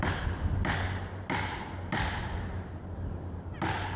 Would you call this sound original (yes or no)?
yes